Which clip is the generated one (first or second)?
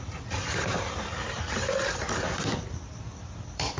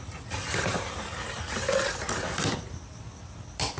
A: first